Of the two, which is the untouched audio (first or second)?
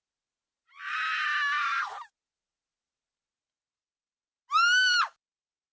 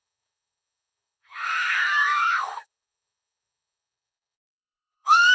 first